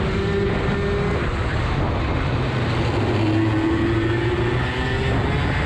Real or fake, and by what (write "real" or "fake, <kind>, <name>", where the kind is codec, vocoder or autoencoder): real